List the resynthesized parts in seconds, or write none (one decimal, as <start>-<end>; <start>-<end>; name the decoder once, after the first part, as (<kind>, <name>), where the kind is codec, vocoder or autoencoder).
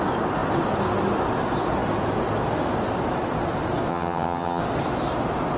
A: 3.9-4.6 (vocoder, HiFi-GAN)